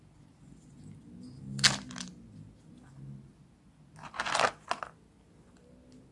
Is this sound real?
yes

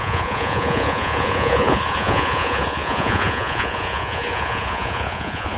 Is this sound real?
no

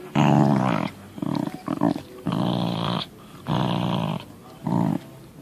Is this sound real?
no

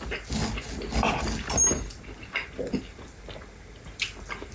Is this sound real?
yes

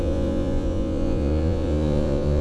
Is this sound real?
no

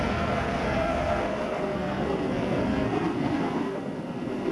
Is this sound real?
no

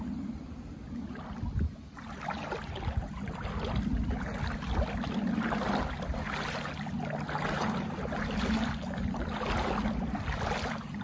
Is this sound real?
yes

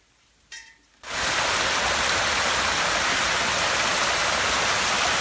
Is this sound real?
yes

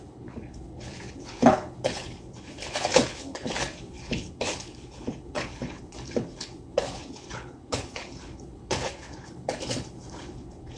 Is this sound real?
no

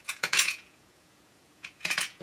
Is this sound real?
no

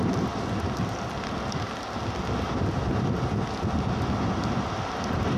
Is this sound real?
yes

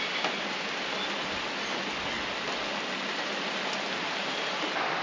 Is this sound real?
yes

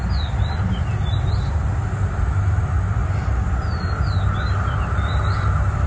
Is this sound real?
yes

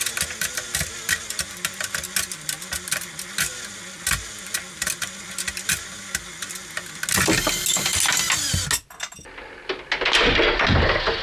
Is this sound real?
yes